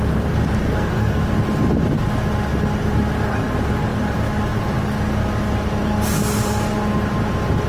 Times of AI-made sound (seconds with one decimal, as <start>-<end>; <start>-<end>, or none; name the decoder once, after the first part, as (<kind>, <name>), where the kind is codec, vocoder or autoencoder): 0.6-1.2 (codec, SNAC)